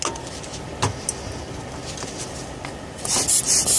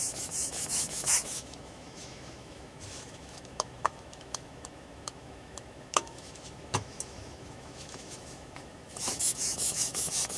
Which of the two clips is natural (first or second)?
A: first